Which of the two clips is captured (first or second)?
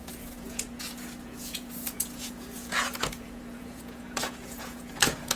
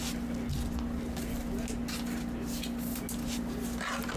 second